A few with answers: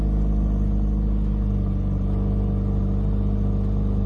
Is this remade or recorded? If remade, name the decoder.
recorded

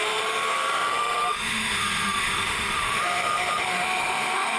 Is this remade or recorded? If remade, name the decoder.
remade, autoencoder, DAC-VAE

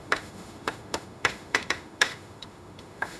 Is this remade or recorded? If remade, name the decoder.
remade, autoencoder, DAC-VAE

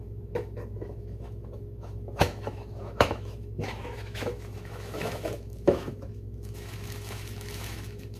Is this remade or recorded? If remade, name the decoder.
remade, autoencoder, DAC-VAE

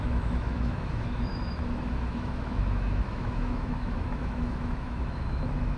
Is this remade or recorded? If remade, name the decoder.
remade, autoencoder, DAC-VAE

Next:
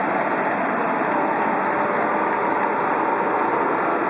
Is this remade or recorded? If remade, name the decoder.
recorded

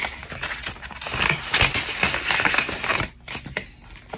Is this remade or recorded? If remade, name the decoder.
recorded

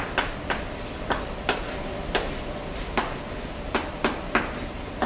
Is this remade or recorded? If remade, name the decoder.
recorded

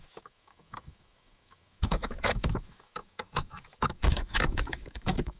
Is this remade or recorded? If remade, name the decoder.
remade, autoencoder, DAC-VAE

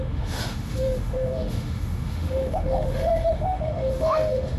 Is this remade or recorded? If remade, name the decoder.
remade, autoencoder, DAC-VAE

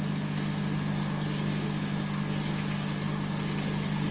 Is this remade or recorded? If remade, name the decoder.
recorded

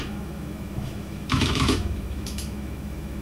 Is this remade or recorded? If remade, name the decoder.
remade, autoencoder, DAC-VAE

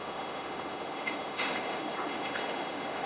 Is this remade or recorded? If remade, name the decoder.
remade, autoencoder, DAC-VAE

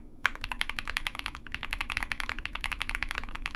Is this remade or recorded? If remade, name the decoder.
remade, autoencoder, DAC-VAE